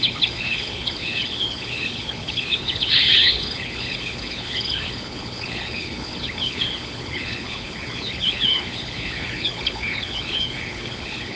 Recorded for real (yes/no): no